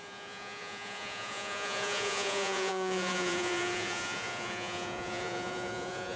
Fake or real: fake